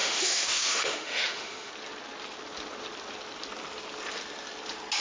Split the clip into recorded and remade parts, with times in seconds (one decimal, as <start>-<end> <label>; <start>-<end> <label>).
0.0-1.7 remade; 1.7-5.0 recorded